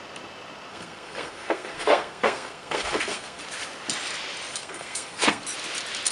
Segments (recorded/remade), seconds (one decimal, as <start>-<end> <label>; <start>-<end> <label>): 0.0-0.7 recorded; 0.7-3.4 remade; 3.4-4.5 recorded; 4.5-5.4 remade; 5.4-6.1 recorded